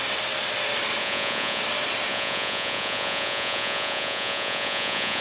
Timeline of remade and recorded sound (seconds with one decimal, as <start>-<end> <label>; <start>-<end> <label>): 0.0-1.0 recorded; 1.0-1.6 remade; 1.6-2.1 recorded; 2.1-5.2 remade